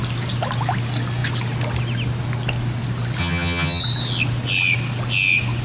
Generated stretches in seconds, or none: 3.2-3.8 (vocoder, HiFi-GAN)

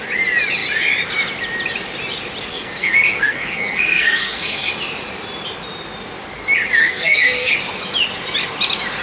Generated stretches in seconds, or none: 2.5-4.7 (codec, SNAC); 6.8-7.5

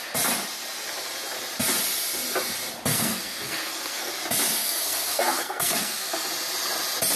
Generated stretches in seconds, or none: 2.9-4.1 (codec, SNAC); 4.6-6.1